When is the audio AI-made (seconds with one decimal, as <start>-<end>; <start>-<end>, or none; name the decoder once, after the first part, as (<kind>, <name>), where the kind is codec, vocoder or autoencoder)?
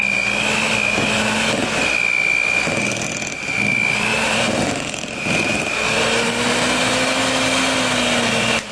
4.1-5.6 (vocoder, BigVGAN v2)